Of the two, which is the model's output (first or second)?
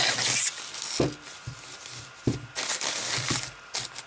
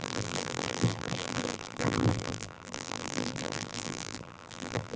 second